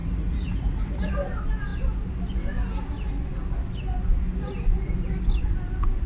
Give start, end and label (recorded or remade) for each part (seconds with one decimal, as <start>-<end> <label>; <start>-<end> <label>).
0.0-1.1 remade; 1.1-6.1 recorded